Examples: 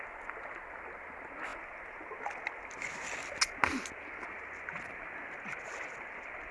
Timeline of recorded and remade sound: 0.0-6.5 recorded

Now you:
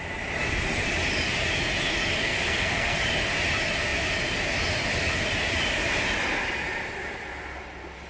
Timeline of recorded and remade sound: 0.0-2.2 recorded; 2.2-3.0 remade; 3.0-8.1 recorded

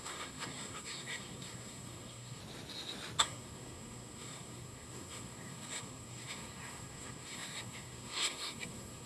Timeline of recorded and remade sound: 0.0-2.4 remade; 2.4-3.2 recorded; 3.2-9.1 remade

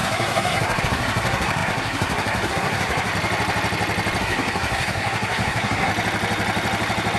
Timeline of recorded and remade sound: 0.0-3.1 remade; 3.1-4.2 recorded; 4.2-5.9 remade; 5.9-7.2 recorded

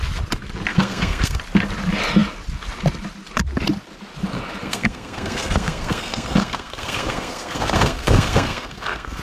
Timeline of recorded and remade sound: 0.0-0.7 recorded; 0.7-1.4 remade; 1.4-4.6 recorded; 4.6-9.2 remade